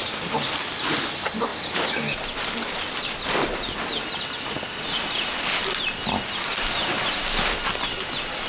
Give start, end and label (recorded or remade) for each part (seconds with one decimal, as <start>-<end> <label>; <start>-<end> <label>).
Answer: 0.0-8.5 recorded